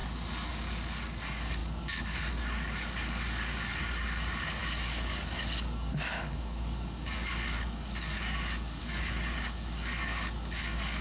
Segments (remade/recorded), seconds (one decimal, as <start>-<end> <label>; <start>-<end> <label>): 0.0-0.5 recorded; 0.5-11.0 remade